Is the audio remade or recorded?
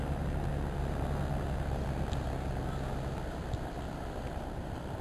recorded